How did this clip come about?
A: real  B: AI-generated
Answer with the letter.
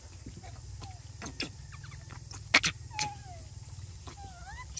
A